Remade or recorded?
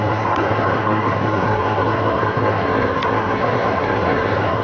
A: remade